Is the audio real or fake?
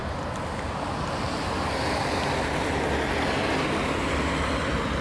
real